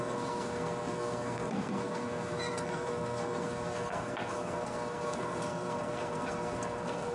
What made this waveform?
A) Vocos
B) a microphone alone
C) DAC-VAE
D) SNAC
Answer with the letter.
D